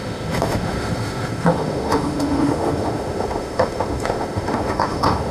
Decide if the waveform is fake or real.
fake